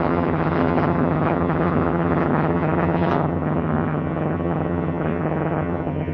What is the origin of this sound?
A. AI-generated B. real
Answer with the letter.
A